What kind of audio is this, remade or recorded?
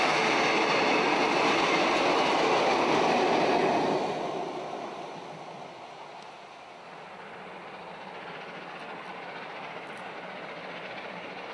recorded